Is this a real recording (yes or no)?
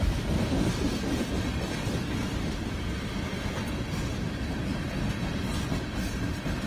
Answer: yes